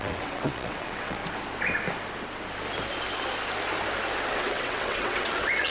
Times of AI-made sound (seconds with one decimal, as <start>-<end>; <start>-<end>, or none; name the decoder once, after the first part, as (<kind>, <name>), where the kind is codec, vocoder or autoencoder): 0.0-1.2 (vocoder, WaveNeXt); 4.3-5.7